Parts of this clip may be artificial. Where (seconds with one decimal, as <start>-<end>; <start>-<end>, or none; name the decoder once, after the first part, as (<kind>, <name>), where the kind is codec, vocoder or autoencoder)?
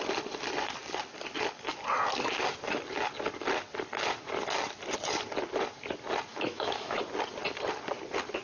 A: 6.3-7.0 (autoencoder, DAC-VAE)